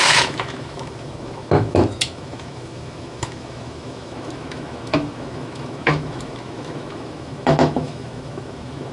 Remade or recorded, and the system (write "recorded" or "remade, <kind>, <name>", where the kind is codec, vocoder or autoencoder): remade, autoencoder, DAC-VAE